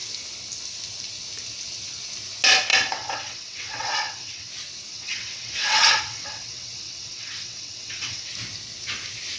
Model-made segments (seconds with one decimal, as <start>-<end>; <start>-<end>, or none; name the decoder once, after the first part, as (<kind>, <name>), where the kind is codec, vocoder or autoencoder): 2.7-4.5 (vocoder, WaveNeXt); 4.9-8.3